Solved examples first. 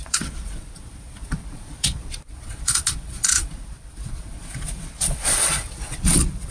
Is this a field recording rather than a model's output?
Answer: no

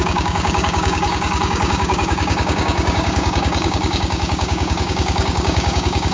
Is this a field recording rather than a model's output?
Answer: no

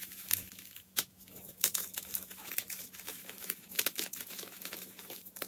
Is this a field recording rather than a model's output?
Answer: no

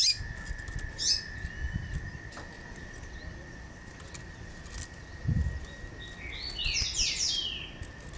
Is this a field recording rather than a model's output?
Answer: yes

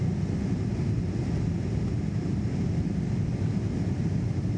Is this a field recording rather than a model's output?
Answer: yes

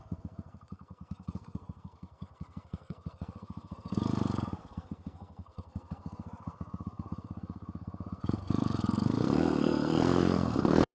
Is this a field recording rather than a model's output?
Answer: no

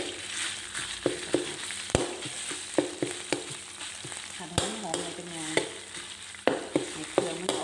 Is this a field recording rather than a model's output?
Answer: no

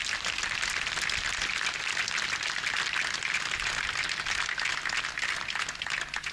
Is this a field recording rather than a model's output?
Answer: yes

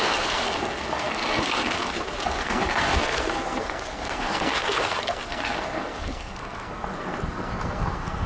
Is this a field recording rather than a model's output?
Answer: no